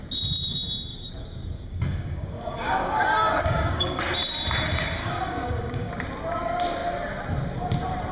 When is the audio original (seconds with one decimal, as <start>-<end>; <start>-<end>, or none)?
0.0-0.9; 4.0-5.0; 5.9-8.1